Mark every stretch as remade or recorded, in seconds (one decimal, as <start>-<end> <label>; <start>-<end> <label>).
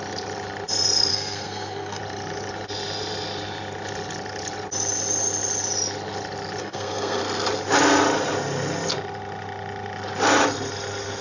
0.0-1.1 recorded; 1.1-2.0 remade; 2.0-6.6 recorded; 6.6-7.2 remade; 7.2-11.2 recorded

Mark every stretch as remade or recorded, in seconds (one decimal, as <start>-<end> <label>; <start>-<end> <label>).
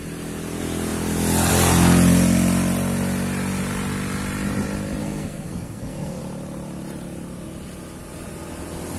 0.0-5.0 recorded; 5.0-6.2 remade; 6.2-9.0 recorded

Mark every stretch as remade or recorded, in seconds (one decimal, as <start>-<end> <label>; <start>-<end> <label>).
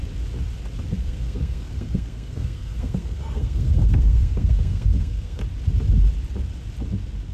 0.0-1.0 recorded; 1.0-5.4 remade; 5.4-7.3 recorded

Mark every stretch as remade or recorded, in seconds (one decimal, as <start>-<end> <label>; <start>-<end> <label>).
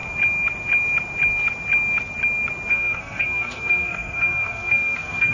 0.0-2.7 recorded; 2.7-5.3 remade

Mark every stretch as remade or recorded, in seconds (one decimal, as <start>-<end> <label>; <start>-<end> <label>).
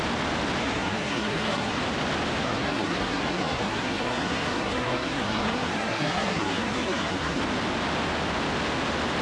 0.0-0.6 recorded; 0.6-1.8 remade; 1.8-2.4 recorded; 2.4-7.4 remade; 7.4-9.2 recorded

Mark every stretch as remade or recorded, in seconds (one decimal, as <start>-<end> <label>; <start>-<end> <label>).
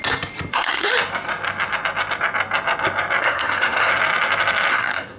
0.0-0.5 recorded; 0.5-0.9 remade; 0.9-3.2 recorded; 3.2-3.9 remade; 3.9-4.7 recorded; 4.7-5.2 remade